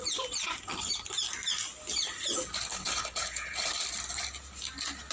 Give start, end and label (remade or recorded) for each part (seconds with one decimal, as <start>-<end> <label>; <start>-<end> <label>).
0.0-2.7 recorded; 2.7-3.7 remade; 3.7-5.1 recorded